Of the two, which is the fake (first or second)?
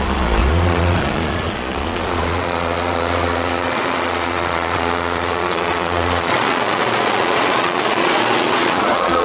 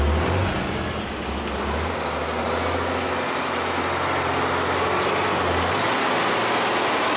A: first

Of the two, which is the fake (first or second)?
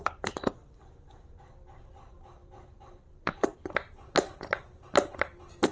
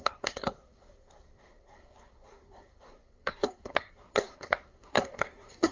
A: second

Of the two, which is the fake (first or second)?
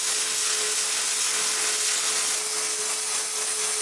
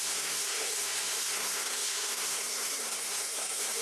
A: second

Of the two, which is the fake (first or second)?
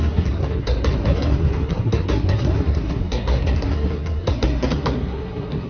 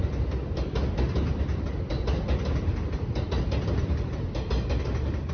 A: first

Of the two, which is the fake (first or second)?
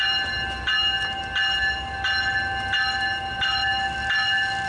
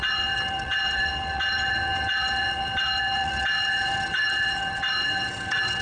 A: second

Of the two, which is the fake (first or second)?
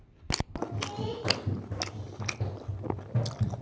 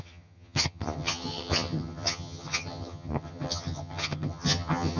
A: second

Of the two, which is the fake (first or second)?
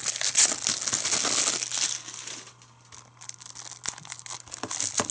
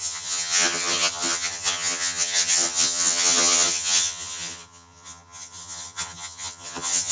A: second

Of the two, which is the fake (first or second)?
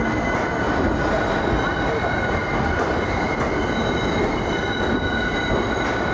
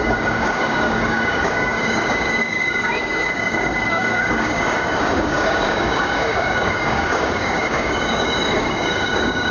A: second